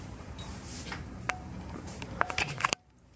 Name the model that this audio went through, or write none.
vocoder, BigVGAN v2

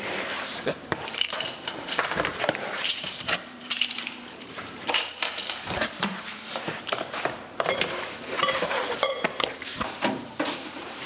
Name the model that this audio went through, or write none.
vocoder, BigVGAN v2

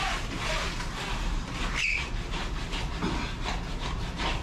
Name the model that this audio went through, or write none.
vocoder, BigVGAN v2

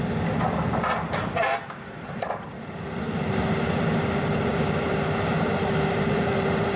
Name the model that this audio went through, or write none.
vocoder, BigVGAN v2